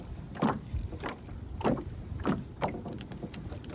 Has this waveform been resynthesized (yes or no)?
no